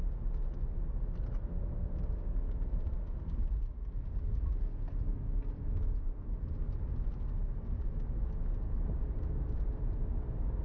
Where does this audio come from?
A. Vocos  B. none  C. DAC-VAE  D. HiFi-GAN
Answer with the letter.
B